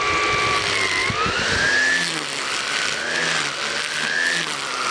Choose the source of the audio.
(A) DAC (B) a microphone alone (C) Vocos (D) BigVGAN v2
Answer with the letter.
B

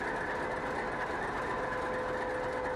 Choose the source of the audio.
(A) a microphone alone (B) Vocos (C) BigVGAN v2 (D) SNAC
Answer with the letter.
A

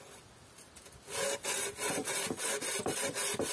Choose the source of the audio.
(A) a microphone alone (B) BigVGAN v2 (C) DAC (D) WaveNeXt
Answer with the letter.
A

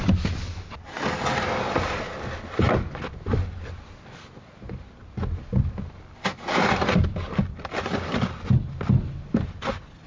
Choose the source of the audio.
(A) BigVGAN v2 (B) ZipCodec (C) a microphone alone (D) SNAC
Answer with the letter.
C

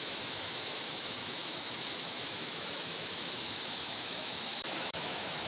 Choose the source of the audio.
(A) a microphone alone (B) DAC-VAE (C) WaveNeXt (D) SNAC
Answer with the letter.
B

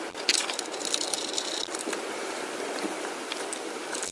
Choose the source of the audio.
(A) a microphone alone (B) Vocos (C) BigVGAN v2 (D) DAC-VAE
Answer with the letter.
A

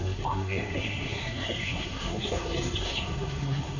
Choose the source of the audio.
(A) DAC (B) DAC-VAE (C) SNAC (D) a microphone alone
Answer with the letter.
C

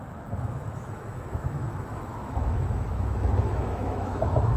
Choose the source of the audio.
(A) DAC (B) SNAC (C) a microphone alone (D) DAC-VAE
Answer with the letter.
D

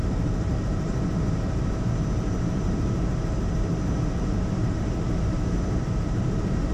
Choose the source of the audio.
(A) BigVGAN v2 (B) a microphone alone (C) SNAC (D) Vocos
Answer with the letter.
A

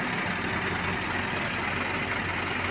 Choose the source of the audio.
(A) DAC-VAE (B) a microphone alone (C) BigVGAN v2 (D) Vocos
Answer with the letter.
B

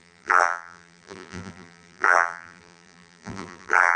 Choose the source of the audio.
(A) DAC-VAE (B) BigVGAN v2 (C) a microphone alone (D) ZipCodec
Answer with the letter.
B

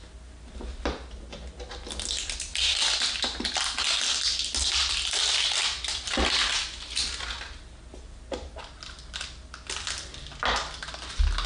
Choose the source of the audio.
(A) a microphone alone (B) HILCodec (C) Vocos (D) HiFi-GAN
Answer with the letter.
A